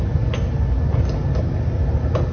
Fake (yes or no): no